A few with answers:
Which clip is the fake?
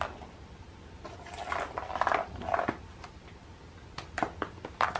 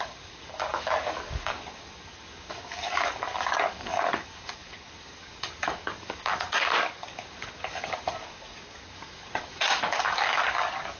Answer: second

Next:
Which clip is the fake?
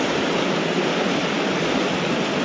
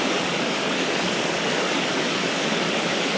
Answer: second